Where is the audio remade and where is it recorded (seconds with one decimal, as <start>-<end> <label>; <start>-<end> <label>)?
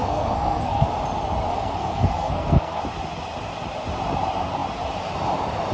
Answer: 0.0-0.9 remade; 0.9-1.5 recorded; 1.5-2.8 remade; 2.8-5.7 recorded